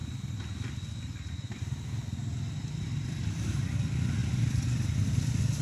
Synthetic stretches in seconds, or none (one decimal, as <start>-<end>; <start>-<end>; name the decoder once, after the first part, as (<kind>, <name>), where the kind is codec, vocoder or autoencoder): none